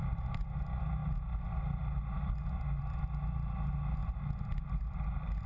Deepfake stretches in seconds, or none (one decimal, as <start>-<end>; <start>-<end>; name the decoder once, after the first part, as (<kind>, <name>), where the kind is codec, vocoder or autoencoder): none